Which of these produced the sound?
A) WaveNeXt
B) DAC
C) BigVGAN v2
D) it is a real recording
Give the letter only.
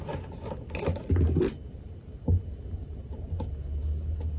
D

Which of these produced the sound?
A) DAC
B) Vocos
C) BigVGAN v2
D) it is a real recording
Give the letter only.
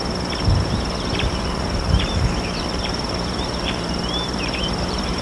C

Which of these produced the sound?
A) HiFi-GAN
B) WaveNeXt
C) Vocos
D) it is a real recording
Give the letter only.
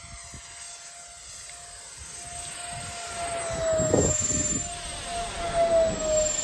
D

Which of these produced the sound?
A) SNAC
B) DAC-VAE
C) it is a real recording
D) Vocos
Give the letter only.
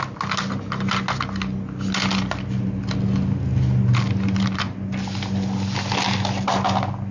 C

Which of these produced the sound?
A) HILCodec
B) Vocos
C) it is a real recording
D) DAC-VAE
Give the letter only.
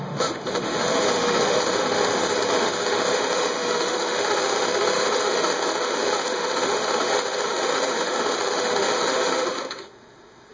D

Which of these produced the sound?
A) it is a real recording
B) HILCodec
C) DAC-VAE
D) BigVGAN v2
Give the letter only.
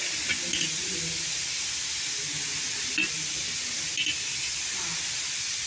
A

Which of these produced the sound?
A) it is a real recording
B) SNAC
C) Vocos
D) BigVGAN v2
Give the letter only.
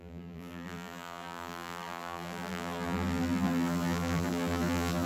D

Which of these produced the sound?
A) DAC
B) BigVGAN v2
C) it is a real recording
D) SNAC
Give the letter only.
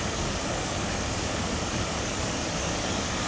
A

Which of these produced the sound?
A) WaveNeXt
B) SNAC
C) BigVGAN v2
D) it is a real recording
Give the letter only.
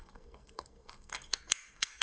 B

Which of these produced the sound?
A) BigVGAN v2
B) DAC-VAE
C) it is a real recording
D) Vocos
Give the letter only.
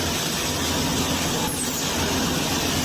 C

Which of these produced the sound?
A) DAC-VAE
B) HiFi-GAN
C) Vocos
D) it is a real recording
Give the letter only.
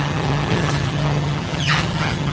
B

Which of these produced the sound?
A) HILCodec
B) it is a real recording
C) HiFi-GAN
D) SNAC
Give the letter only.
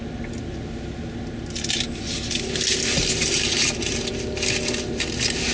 B